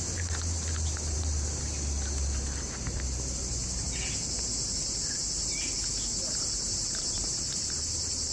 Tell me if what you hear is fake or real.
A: fake